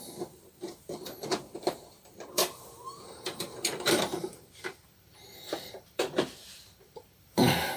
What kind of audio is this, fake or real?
fake